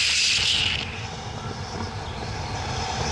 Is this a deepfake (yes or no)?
no